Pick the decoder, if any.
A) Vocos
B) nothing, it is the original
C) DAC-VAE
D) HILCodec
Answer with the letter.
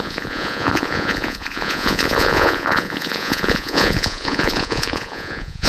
A